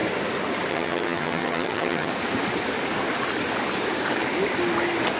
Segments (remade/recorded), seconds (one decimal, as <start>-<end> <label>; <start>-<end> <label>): 0.0-0.7 recorded; 0.7-2.1 remade; 2.1-5.2 recorded